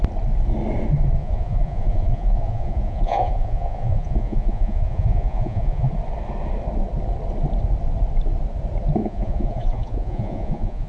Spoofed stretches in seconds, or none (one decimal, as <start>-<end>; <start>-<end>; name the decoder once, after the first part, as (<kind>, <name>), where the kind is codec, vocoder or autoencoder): 1.2-5.9 (vocoder, Vocos); 9.0-10.9